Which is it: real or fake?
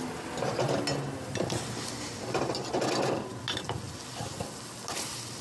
real